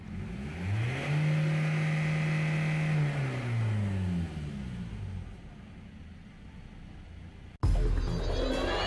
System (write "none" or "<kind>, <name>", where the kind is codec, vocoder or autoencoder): none